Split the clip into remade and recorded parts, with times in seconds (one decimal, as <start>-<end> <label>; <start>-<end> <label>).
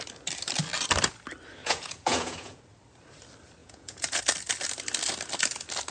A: 0.0-1.6 recorded; 1.6-2.6 remade; 2.6-3.6 recorded; 3.6-4.2 remade; 4.2-5.9 recorded